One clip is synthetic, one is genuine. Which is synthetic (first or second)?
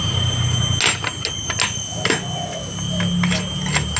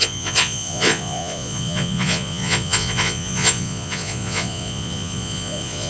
second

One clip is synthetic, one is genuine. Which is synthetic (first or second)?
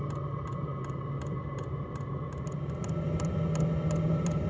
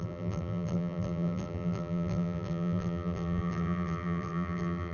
second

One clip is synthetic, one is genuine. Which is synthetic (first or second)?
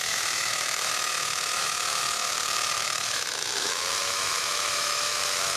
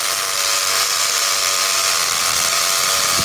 first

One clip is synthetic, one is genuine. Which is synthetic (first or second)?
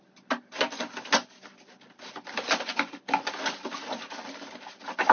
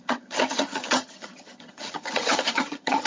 second